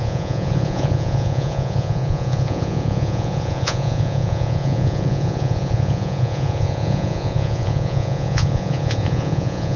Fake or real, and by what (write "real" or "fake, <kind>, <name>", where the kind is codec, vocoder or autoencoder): fake, vocoder, Vocos